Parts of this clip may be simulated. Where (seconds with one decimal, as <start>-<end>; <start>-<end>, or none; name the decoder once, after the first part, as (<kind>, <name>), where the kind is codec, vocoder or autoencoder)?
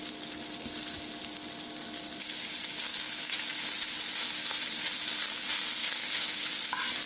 2.9-3.7 (autoencoder, DAC-VAE); 5.8-6.5